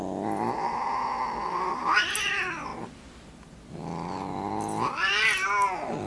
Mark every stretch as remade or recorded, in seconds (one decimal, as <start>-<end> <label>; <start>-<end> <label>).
0.0-6.1 recorded